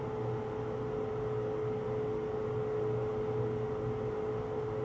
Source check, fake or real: real